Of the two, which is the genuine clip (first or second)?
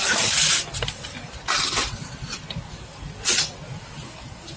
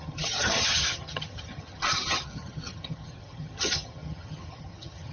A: first